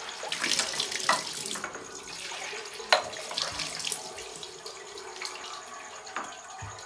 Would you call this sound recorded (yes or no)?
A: yes